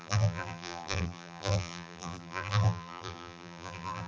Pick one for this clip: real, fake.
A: fake